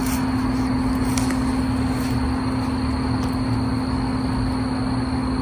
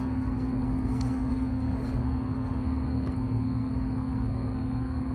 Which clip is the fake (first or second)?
second